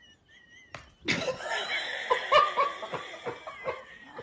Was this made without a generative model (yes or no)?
yes